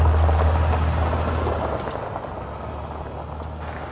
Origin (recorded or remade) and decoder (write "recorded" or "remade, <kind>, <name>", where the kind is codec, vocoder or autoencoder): recorded